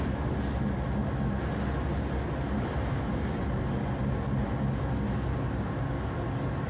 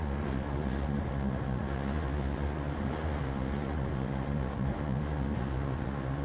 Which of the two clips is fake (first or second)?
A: second